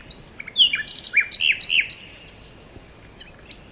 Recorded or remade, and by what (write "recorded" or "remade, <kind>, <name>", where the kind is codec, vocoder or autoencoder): recorded